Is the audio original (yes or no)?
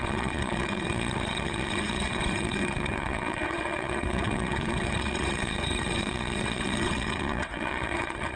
no